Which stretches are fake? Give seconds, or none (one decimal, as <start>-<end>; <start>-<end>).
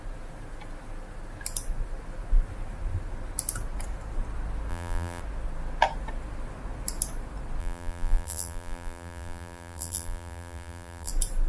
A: 4.7-5.2; 7.6-11.1